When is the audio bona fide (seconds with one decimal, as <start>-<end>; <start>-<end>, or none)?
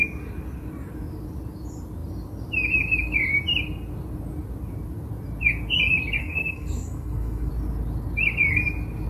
0.0-6.2; 7.5-9.1